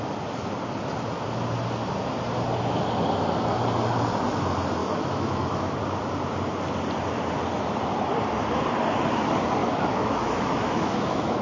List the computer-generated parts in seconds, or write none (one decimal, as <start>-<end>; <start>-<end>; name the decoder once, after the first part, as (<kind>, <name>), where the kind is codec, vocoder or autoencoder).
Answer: 4.8-5.8 (autoencoder, DAC-VAE); 9.6-11.4